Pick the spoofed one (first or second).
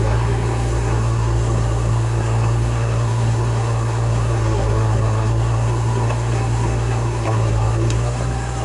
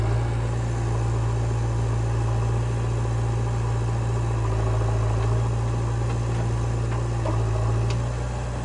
first